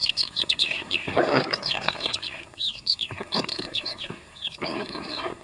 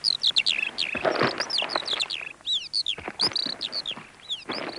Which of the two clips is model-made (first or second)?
first